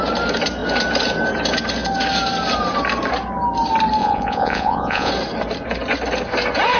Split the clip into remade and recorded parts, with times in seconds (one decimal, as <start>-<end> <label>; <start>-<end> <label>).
0.0-4.0 recorded; 4.0-5.1 remade; 5.1-6.8 recorded